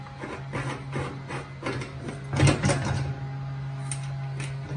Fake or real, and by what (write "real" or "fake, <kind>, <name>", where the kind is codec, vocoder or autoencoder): real